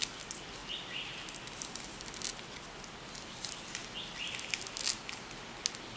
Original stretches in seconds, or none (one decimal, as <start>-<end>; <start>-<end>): 0.0-6.0

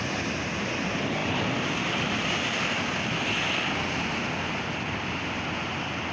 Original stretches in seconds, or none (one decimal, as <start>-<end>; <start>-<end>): 0.0-6.1

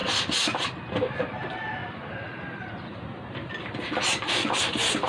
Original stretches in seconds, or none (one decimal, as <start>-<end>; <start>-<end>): 0.0-5.1

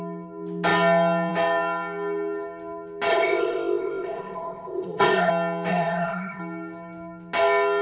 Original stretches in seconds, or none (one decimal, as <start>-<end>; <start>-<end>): 0.0-3.1; 5.3-5.7; 6.4-7.8

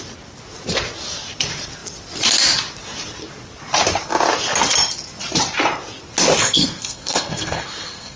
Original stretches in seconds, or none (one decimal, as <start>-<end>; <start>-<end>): 0.0-6.4

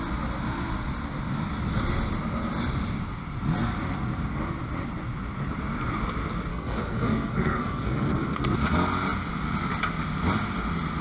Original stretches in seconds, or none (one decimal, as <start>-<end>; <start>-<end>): 0.0-6.5; 8.4-11.0

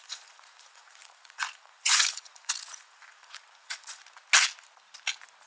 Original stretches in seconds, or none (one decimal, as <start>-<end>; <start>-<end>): 4.0-5.5

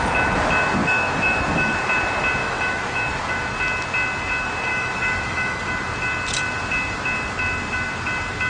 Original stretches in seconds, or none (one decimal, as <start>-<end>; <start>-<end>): 0.0-0.8; 1.8-2.4; 3.3-4.7; 5.6-8.5